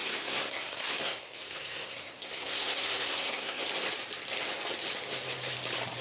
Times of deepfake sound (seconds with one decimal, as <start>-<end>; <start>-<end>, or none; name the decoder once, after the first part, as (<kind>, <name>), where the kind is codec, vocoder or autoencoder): 0.0-3.6 (codec, SNAC)